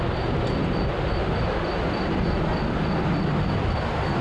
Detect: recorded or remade recorded